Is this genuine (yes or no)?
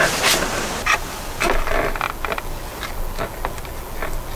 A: yes